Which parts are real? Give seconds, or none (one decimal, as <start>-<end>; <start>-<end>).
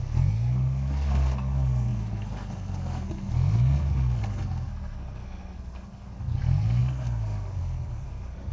none